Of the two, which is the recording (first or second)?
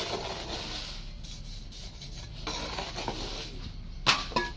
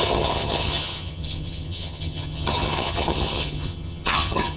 first